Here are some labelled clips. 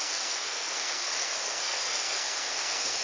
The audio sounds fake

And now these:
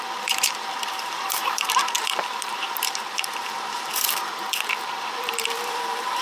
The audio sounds fake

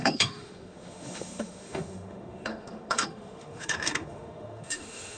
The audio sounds fake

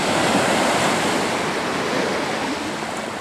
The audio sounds real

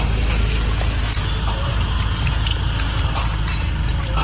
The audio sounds real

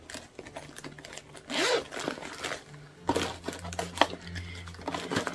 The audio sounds real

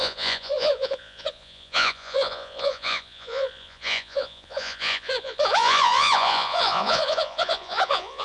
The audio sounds fake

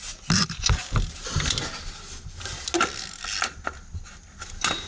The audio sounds real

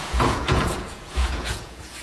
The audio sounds fake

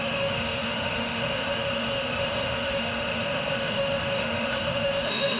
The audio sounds fake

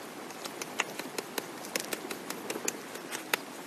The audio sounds real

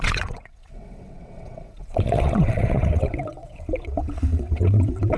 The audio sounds fake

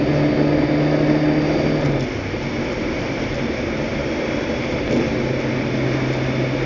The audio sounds real